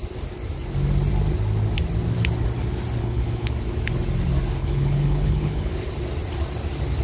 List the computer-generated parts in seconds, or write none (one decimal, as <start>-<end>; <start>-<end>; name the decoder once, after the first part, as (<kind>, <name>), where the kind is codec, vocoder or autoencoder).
3.0-3.5 (codec, HILCodec); 4.6-5.7